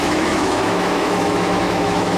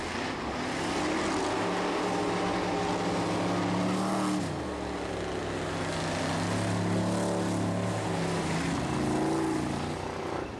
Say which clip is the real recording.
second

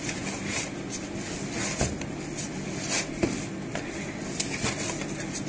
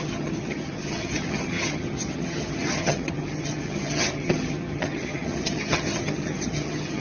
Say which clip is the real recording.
first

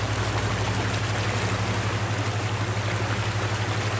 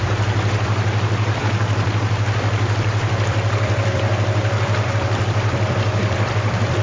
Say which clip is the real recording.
first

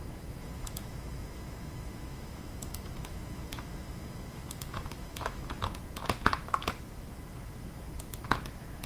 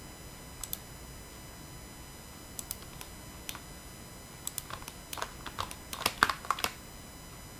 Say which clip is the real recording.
second